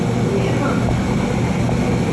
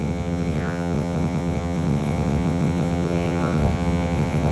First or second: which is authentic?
first